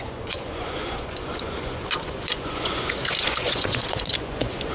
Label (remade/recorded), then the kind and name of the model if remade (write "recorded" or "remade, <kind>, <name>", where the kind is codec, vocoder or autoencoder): remade, vocoder, Vocos